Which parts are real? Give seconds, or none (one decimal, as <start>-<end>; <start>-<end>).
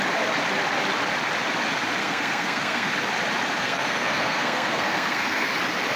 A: 0.0-2.0; 2.9-3.6; 5.5-6.0